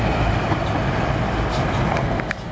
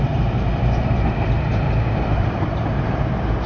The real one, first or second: first